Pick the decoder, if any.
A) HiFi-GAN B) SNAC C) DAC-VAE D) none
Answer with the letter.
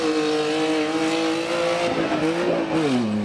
D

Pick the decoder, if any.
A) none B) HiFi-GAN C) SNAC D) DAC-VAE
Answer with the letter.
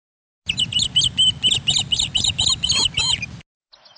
A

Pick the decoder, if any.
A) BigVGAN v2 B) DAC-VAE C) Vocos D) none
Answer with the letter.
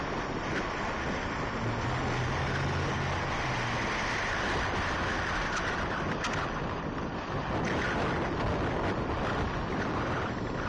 D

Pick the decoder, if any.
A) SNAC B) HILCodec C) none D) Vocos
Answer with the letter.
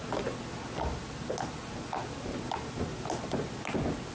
C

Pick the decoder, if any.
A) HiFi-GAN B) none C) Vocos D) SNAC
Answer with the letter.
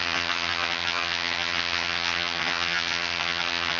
A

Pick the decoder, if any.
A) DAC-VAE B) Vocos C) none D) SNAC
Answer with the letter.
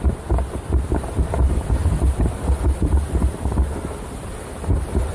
C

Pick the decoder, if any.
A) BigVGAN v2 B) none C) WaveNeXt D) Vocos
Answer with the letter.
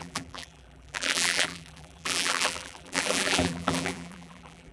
A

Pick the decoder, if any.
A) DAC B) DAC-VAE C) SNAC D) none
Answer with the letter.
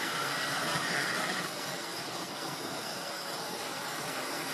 C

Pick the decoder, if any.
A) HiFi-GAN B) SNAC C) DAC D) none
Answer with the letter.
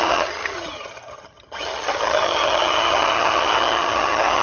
A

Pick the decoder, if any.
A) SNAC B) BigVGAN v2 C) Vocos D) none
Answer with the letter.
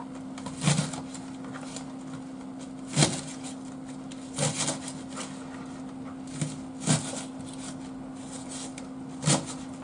D